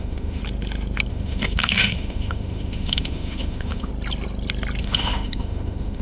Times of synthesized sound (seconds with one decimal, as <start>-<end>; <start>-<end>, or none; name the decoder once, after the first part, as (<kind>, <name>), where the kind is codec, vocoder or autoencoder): 0.0-0.4 (autoencoder, DAC-VAE); 1.1-3.9; 4.8-6.0